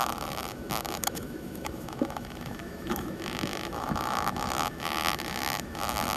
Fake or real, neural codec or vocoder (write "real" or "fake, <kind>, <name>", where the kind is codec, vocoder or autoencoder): fake, autoencoder, DAC-VAE